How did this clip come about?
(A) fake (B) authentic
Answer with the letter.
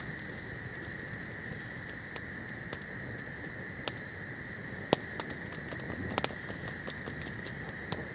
B